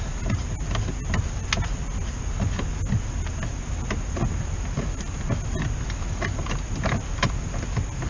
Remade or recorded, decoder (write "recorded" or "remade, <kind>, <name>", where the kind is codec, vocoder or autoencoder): recorded